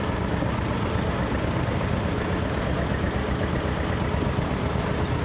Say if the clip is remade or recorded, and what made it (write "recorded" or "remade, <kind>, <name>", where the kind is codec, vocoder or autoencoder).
recorded